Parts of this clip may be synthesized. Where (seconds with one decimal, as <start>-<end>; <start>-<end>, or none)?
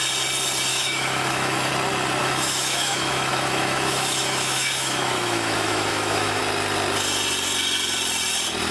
0.7-1.7; 2.2-6.4